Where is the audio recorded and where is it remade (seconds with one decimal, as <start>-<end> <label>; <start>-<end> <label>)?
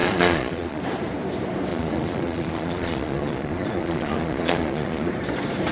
0.0-0.8 remade; 0.8-1.7 recorded; 1.7-5.1 remade; 5.1-5.7 recorded